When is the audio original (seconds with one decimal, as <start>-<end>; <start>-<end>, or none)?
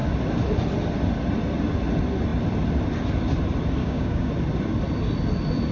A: 0.0-3.8; 4.3-5.7